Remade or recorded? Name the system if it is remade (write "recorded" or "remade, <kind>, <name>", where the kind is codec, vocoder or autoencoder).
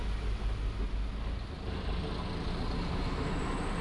recorded